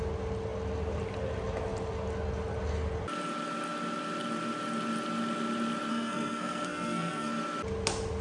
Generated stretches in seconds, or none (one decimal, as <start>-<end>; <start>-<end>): 5.9-7.3